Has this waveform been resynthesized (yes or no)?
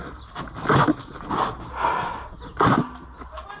no